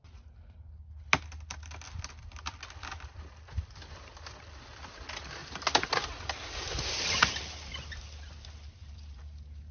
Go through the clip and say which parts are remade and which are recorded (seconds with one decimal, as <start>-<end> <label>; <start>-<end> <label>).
0.0-5.4 recorded; 5.4-7.4 remade; 7.4-8.8 recorded; 8.8-9.7 remade